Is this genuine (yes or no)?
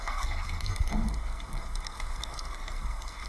no